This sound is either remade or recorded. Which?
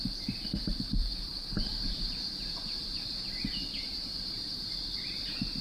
remade